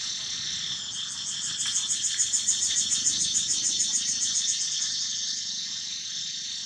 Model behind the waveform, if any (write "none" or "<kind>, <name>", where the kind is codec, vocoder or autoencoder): none